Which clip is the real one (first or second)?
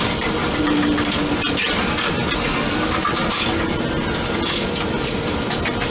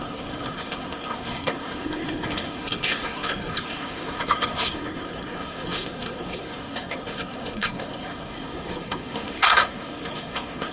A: first